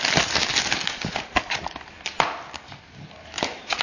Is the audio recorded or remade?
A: recorded